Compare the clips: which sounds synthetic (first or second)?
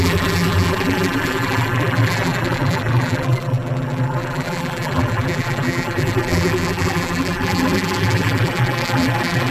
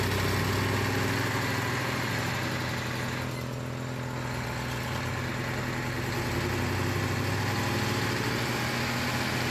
first